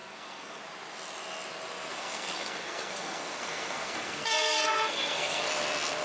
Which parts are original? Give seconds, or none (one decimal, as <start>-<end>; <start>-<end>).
0.6-1.9; 5.5-6.0